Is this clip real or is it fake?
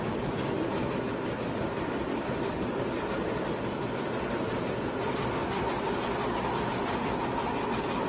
real